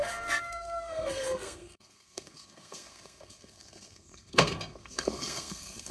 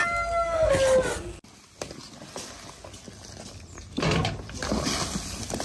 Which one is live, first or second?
second